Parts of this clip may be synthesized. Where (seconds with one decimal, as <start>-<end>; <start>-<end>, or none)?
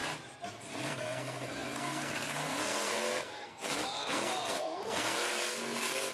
0.5-6.1